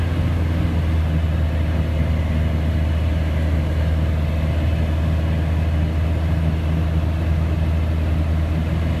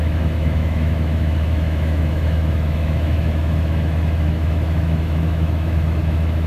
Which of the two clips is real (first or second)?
first